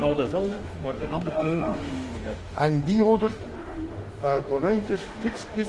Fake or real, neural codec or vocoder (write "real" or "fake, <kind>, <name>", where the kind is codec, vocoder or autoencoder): fake, autoencoder, DAC-VAE